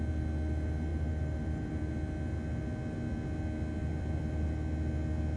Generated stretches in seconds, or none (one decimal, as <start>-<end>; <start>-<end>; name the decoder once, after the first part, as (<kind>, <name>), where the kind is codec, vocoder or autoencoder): 0.9-1.9 (vocoder, BigVGAN v2); 3.8-4.5